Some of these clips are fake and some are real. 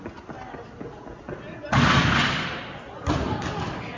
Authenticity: real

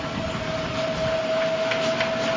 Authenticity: real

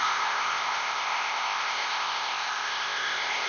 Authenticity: fake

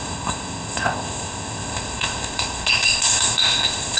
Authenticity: fake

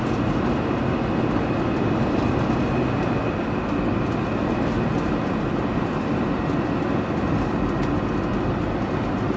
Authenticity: real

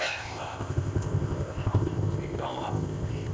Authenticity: fake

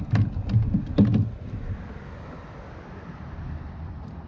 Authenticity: real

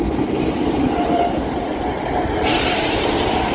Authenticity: real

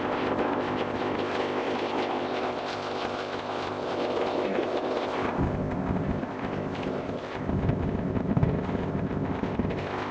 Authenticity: fake